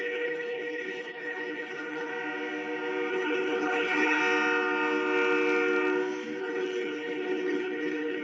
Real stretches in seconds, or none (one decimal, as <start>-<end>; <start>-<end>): 2.1-3.1; 4.2-6.4